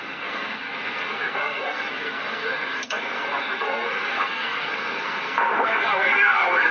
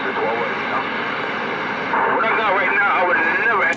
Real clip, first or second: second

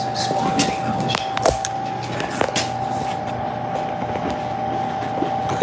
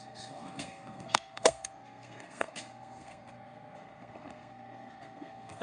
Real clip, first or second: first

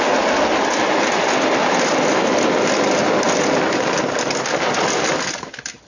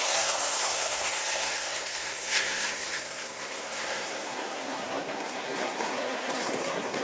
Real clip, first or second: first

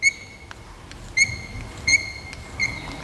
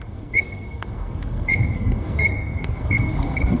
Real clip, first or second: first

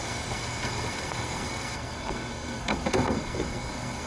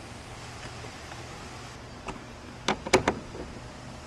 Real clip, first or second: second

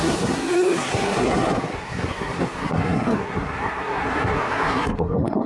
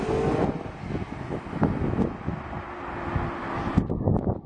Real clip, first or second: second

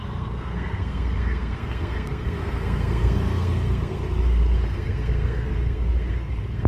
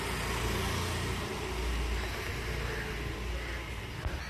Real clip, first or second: second